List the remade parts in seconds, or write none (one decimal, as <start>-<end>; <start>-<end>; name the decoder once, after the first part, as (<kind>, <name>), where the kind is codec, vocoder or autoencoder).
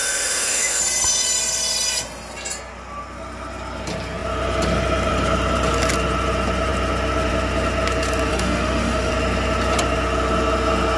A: 0.0-0.8 (autoencoder, DAC-VAE); 8.3-9.1